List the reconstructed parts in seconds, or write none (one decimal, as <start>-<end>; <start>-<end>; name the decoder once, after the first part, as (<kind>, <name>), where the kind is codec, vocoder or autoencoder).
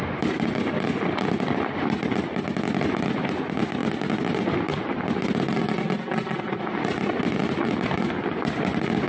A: none